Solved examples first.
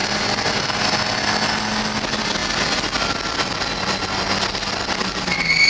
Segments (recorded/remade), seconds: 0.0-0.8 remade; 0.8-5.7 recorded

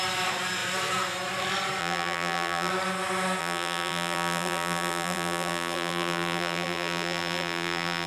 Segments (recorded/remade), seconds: 0.0-1.8 recorded; 1.8-2.7 remade; 2.7-3.4 recorded; 3.4-8.1 remade